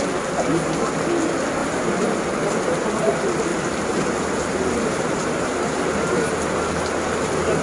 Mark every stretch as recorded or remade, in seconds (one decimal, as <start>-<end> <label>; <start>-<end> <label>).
0.0-1.6 recorded; 1.6-2.2 remade; 2.2-3.5 recorded; 3.5-6.2 remade; 6.2-7.6 recorded